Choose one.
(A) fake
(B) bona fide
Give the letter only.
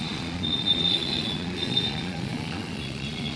A